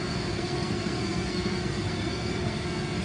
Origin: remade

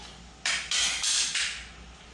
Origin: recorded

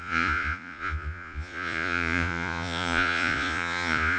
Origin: remade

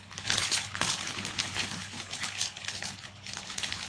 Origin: remade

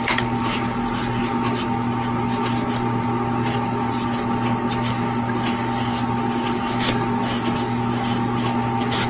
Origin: recorded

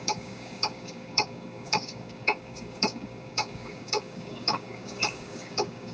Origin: remade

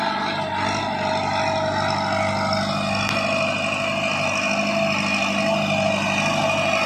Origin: recorded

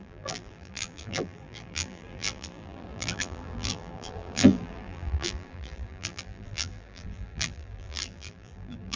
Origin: remade